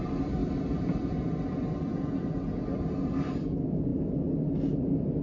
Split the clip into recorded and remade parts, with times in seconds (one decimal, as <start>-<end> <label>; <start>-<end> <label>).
0.0-5.2 recorded